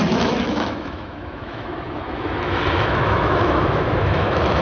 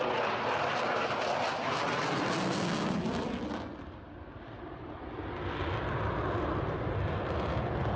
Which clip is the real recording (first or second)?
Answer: second